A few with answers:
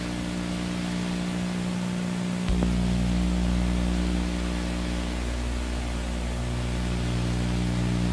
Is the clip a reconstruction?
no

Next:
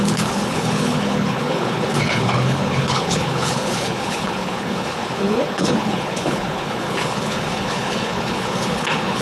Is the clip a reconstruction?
yes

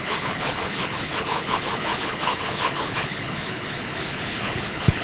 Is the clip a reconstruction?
yes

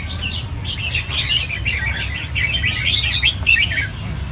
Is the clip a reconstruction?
no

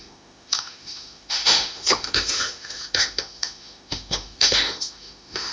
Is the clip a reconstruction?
yes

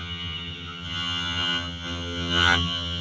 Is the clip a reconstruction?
yes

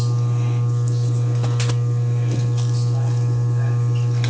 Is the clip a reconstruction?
no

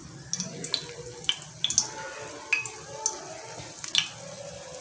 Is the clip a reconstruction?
no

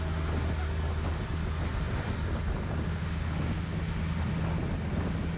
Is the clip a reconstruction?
no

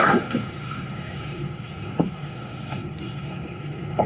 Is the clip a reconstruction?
yes